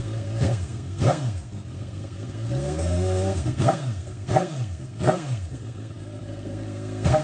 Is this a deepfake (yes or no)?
yes